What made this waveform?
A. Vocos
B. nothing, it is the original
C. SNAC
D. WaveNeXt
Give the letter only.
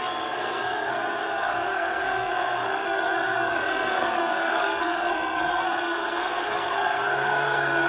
C